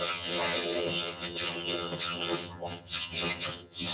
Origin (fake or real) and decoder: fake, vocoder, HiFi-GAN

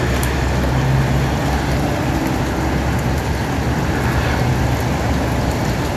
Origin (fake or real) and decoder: real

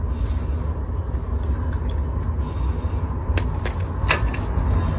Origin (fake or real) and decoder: real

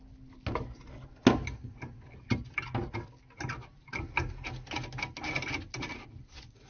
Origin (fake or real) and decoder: real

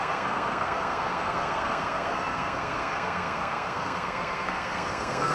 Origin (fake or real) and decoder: fake, codec, SNAC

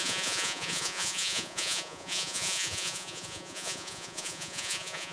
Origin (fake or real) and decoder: fake, vocoder, Vocos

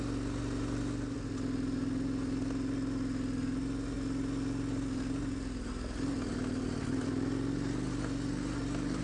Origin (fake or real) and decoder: real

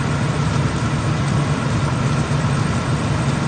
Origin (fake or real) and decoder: real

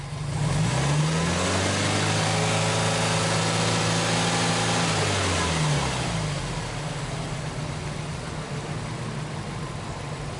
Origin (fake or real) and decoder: real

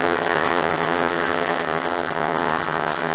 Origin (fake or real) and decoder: fake, vocoder, HiFi-GAN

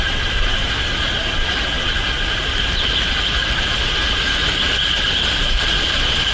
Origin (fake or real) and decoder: real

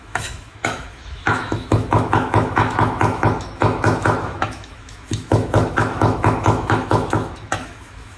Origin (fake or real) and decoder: fake, autoencoder, DAC-VAE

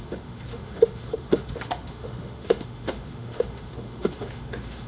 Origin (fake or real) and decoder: fake, autoencoder, DAC-VAE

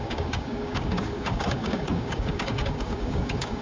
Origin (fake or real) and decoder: fake, codec, DAC